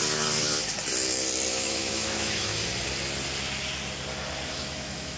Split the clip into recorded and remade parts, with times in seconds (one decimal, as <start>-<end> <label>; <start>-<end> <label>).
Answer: 0.0-1.5 recorded; 1.5-2.5 remade; 2.5-4.5 recorded; 4.5-5.2 remade